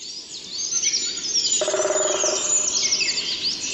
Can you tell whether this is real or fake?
real